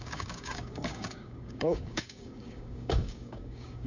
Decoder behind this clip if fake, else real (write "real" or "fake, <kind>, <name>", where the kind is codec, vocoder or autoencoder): fake, codec, DAC